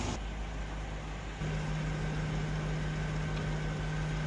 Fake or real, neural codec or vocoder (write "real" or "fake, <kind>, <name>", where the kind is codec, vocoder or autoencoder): real